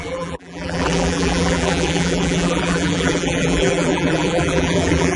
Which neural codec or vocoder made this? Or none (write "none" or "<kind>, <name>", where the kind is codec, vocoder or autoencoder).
vocoder, BigVGAN v2